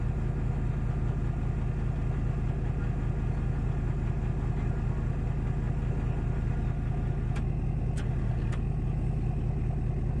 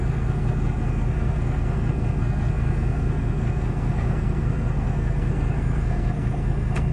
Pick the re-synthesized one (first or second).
second